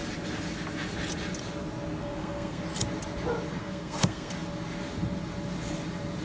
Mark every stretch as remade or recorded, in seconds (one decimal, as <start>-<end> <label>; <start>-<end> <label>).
0.0-2.0 recorded; 2.0-2.6 remade; 2.6-3.6 recorded; 3.6-4.3 remade; 4.3-6.2 recorded